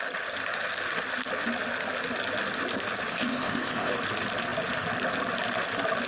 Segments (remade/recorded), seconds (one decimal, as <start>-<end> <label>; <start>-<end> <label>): 0.0-3.1 recorded; 3.1-3.9 remade; 3.9-6.1 recorded